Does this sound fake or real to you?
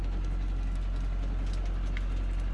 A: real